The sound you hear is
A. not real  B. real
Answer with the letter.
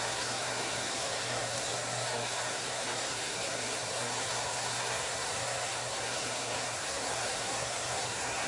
A